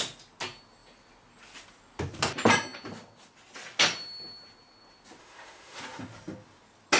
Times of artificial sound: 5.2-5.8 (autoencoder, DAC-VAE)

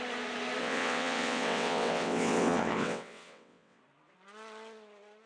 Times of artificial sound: 0.6-3.8 (vocoder, WaveNeXt)

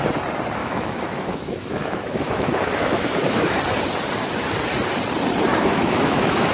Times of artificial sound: 0.6-3.6 (autoencoder, DAC-VAE); 5.5-6.5

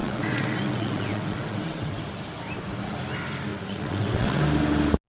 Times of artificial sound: 0.0-2.0 (vocoder, WaveNeXt); 3.5-4.4

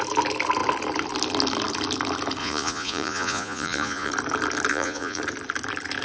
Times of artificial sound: 2.4-4.1 (vocoder, Vocos); 4.7-5.2